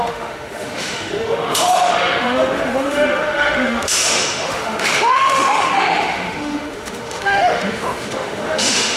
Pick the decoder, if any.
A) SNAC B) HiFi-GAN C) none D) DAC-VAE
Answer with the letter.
D